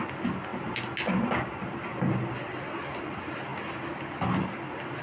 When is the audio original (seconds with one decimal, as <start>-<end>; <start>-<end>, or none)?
0.0-5.0